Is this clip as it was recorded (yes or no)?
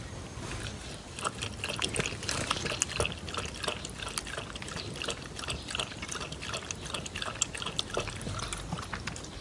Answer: yes